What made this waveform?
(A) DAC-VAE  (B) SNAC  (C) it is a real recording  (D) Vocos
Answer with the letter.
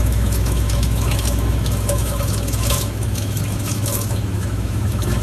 A